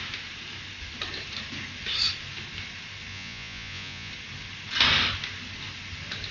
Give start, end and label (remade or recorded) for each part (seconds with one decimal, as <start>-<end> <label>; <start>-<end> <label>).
0.0-3.1 recorded; 3.1-4.1 remade; 4.1-6.3 recorded